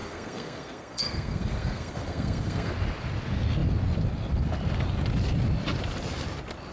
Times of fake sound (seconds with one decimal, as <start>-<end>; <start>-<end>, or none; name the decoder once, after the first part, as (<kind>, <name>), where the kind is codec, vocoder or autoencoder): 0.0-2.7 (codec, SNAC)